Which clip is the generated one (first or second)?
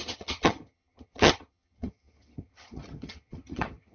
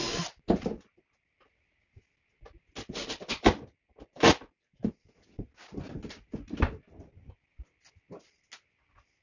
first